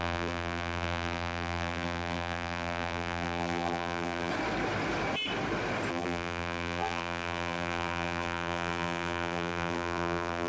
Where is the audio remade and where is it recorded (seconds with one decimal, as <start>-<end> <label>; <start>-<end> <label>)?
0.0-4.3 remade; 4.3-5.9 recorded; 5.9-10.5 remade

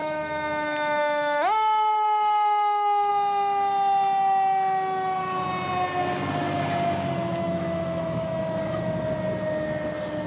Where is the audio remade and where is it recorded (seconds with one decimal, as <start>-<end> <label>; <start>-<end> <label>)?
0.0-3.1 remade; 3.1-7.4 recorded; 7.4-8.6 remade; 8.6-10.3 recorded

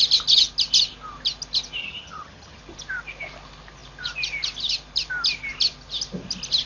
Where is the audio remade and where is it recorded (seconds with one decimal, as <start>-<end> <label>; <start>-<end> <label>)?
0.0-1.8 recorded; 1.8-2.6 remade; 2.6-6.7 recorded

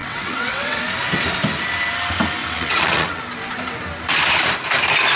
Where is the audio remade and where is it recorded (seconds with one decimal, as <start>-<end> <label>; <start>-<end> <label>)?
0.0-0.8 remade; 0.8-2.4 recorded; 2.4-3.2 remade; 3.2-5.2 recorded

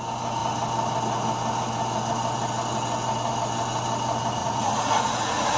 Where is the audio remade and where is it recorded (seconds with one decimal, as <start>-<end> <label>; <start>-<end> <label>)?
0.0-4.4 recorded; 4.4-5.6 remade

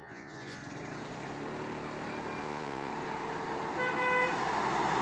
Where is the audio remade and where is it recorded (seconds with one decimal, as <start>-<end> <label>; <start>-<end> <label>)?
0.0-0.6 remade; 0.6-2.4 recorded; 2.4-2.9 remade; 2.9-5.0 recorded